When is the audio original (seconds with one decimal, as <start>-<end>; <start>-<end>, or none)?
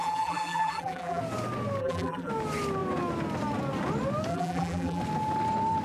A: 1.2-1.8; 2.3-4.3; 5.0-5.8